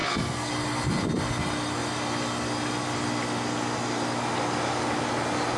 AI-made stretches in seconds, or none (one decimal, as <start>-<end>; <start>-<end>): 0.0-0.5